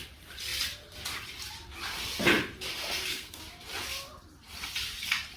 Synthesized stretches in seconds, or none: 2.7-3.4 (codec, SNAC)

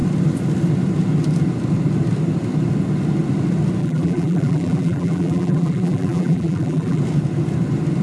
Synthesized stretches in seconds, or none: 3.8-7.0 (vocoder, BigVGAN v2)

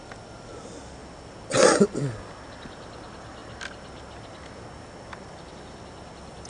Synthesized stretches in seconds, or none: none

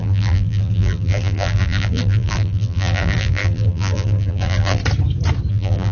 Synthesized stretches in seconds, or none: 0.0-4.8 (vocoder, BigVGAN v2); 5.5-5.9

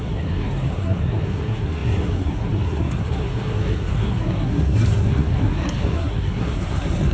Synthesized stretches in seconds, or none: 0.0-7.1 (codec, SNAC)

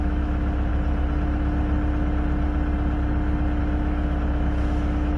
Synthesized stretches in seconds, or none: 0.0-0.7 (autoencoder, DAC-VAE); 3.6-5.2

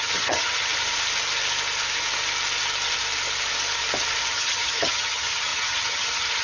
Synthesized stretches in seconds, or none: 0.0-0.7 (vocoder, HiFi-GAN); 4.3-6.4